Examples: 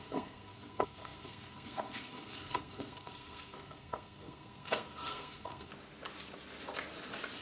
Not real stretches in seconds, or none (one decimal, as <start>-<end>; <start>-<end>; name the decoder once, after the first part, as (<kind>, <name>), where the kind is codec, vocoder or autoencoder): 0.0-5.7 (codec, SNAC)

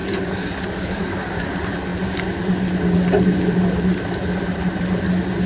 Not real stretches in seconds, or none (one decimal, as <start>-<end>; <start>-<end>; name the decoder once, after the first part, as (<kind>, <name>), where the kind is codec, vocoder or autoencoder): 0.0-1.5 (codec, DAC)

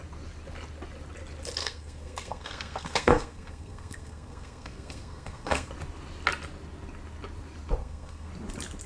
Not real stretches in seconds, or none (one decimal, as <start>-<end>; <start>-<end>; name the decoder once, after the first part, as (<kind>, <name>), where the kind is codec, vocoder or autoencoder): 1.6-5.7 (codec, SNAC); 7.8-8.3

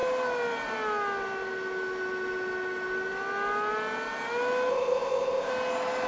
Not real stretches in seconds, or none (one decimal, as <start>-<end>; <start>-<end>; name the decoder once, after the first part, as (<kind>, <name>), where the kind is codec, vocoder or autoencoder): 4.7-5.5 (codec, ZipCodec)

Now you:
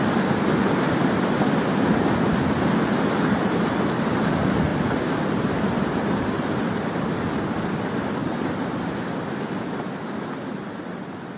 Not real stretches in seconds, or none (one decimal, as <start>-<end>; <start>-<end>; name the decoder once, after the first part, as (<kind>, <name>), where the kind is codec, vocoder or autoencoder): none

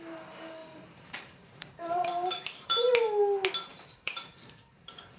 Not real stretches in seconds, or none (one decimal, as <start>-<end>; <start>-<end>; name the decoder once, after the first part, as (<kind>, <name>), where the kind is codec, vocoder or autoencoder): 0.6-2.9 (vocoder, BigVGAN v2); 3.7-5.2